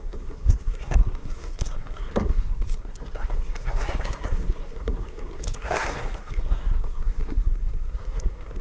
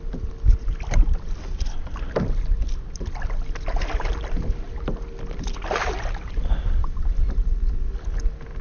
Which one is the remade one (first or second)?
first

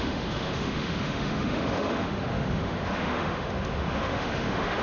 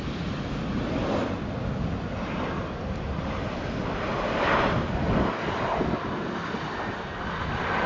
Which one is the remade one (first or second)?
first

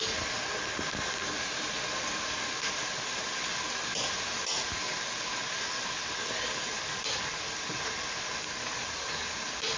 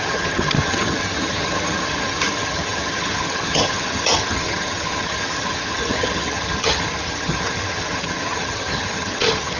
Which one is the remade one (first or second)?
second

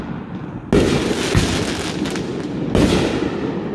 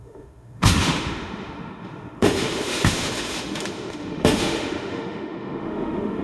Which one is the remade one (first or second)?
second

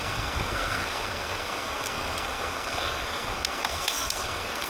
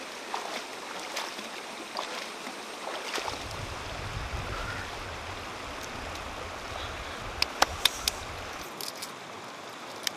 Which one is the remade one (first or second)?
first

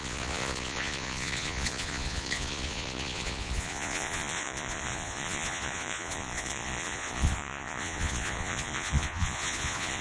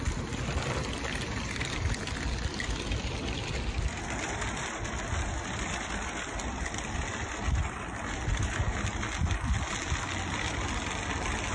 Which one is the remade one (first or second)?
first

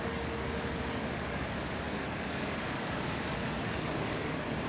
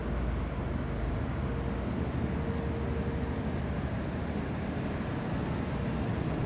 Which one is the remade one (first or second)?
first